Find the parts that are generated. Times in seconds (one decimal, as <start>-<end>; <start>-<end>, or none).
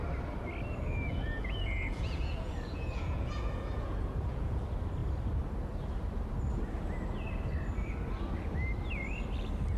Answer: 1.1-4.6